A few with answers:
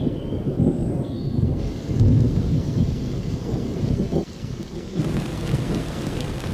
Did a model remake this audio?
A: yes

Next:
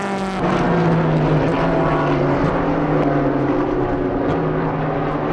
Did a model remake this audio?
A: no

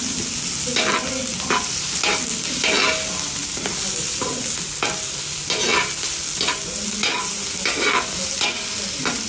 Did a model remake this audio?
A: no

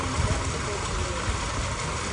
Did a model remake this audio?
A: no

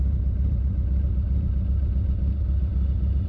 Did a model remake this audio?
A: no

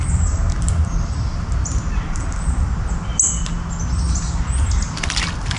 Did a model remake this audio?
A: no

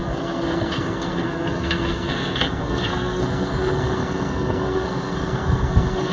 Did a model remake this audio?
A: yes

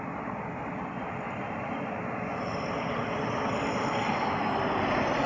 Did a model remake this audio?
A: no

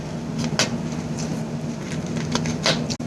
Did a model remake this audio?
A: no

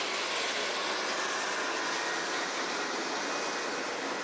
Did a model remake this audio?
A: no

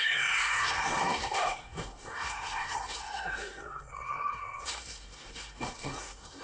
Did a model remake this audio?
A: yes